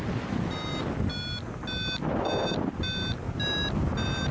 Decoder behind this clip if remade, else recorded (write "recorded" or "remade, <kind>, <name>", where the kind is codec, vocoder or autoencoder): recorded